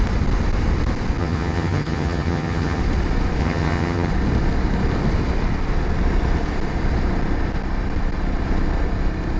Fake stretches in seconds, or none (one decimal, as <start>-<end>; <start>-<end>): 1.2-2.8; 3.4-4.1